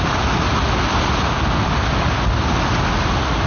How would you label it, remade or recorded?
recorded